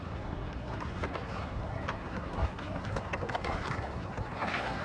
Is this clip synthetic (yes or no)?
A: yes